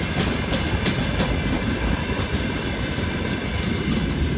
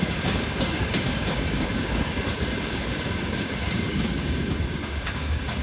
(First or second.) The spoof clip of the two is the second